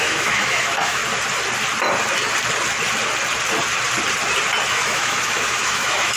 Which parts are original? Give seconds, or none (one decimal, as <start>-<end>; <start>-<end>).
1.0-4.7